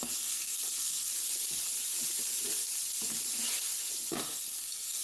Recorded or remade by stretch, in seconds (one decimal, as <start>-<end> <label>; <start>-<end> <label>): 0.0-1.1 remade; 1.1-4.1 recorded; 4.1-5.0 remade